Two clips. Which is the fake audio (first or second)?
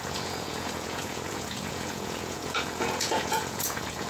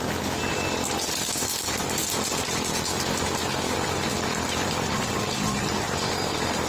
first